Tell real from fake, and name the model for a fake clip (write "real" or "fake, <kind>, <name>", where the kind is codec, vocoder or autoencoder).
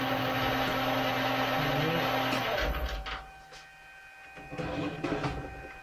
real